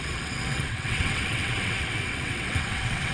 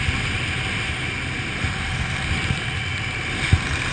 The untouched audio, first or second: second